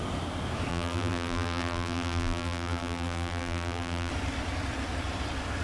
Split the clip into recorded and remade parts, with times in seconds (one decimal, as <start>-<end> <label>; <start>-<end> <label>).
0.0-0.7 recorded; 0.7-4.1 remade; 4.1-5.6 recorded